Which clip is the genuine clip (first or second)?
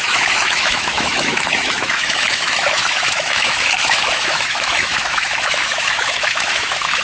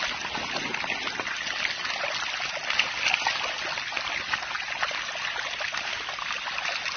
second